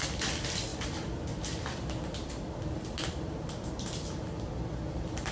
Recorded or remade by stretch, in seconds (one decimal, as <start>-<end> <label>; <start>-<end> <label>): 0.0-5.3 recorded